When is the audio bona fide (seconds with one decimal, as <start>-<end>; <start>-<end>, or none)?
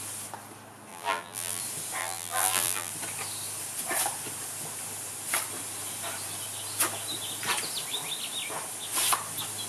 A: 0.0-0.9; 1.6-2.0; 2.9-9.7